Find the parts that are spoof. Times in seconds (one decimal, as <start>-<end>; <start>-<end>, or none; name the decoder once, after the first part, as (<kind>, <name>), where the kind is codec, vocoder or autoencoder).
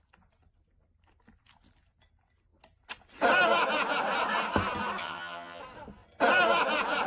5.0-5.6 (vocoder, HiFi-GAN)